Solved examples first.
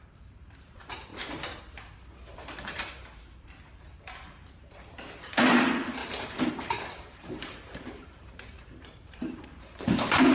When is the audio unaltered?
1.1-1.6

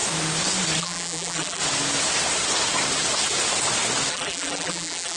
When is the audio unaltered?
0.0-0.8; 1.6-4.1

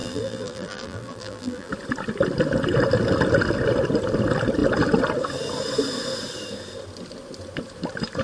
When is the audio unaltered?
1.7-8.2